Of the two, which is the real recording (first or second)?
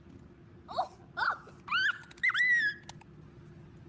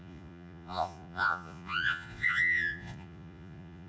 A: first